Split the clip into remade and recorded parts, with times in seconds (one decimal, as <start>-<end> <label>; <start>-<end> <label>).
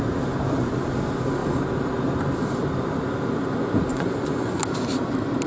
0.0-3.9 recorded; 3.9-4.6 remade; 4.6-5.5 recorded